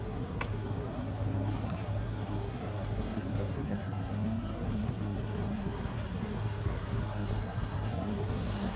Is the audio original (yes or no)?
no